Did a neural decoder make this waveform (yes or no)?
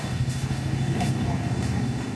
yes